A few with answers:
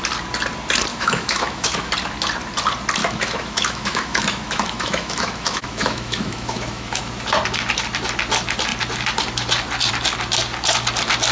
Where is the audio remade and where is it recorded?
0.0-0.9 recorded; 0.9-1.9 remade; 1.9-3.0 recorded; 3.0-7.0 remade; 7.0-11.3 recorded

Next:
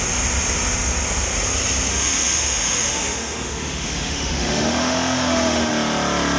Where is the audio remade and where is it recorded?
0.0-1.9 recorded; 1.9-5.7 remade; 5.7-6.4 recorded